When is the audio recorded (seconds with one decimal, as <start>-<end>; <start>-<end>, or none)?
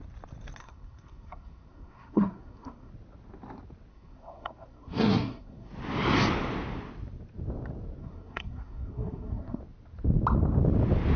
0.0-0.6; 2.9-3.9; 5.7-8.0; 9.6-11.2